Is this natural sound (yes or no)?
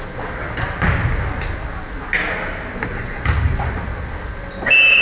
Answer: yes